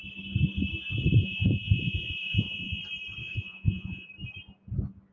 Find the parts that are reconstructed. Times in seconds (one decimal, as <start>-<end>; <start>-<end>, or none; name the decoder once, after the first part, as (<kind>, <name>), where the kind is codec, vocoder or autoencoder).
1.2-2.8 (vocoder, Vocos); 3.2-4.1